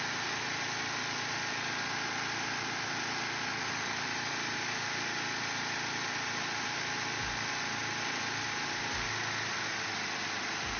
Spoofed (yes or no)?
no